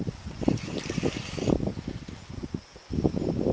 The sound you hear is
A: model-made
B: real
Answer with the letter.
B